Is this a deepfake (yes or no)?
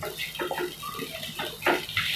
no